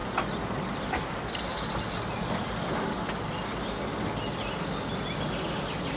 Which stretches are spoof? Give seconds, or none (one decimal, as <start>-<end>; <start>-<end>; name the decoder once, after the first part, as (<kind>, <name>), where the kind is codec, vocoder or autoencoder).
none